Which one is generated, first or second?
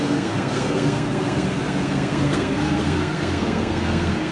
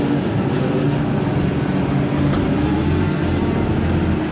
first